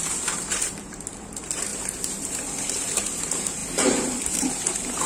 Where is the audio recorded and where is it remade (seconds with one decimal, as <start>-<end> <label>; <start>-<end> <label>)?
0.0-5.1 remade